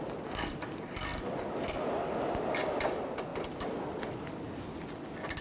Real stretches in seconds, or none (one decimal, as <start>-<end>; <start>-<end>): 0.0-5.4